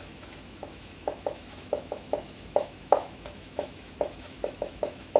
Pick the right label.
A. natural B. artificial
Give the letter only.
B